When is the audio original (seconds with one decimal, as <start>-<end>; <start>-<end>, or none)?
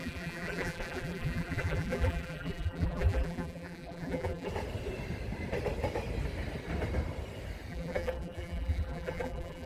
4.5-7.7